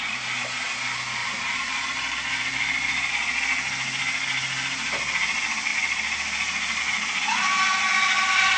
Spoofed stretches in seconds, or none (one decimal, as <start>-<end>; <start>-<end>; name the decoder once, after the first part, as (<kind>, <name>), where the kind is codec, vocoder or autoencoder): 1.2-3.1 (vocoder, BigVGAN v2); 5.7-6.8